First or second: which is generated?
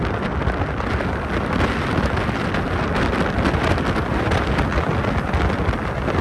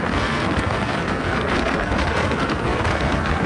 second